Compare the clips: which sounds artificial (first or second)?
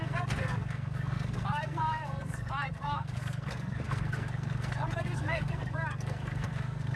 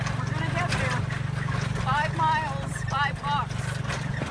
first